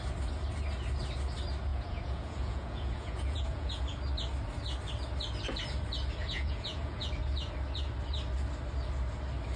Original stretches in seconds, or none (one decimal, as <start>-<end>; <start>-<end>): 0.0-1.7; 3.8-6.2; 7.1-9.6